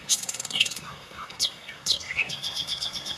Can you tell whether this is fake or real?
fake